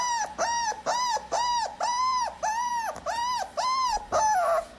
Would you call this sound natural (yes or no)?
no